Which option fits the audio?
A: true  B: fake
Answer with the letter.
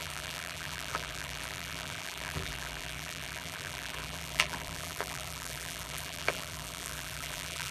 B